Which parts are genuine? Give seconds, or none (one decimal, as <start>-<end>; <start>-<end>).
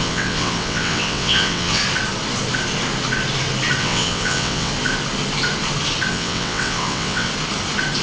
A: 1.8-3.8; 4.7-6.1; 7.3-8.0